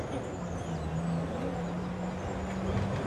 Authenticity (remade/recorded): recorded